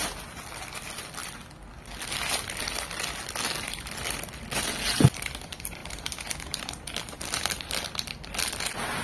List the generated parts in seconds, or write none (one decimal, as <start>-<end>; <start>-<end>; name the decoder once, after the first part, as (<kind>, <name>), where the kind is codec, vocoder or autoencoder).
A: 5.8-8.4 (vocoder, BigVGAN v2)